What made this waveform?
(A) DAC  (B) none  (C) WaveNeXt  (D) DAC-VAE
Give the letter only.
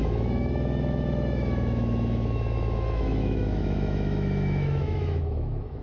D